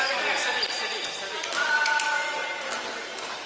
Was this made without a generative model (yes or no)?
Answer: yes